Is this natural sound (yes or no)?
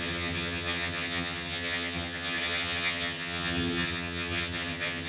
no